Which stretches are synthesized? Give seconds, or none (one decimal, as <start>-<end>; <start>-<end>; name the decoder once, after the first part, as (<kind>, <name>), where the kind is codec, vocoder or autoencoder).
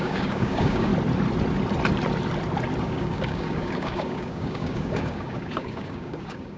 0.0-0.9 (codec, DAC); 2.8-6.6